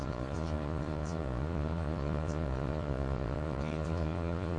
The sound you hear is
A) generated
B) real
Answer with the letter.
A